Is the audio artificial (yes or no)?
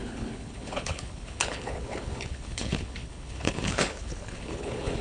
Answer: yes